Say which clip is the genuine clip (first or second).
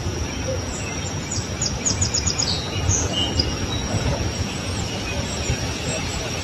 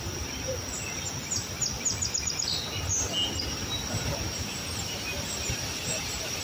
second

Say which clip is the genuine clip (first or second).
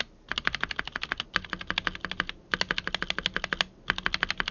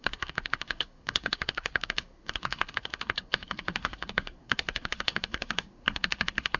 first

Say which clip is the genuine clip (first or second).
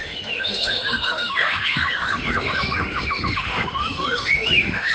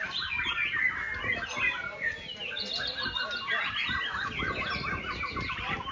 second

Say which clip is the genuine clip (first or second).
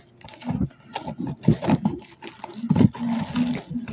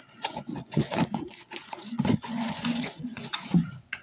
first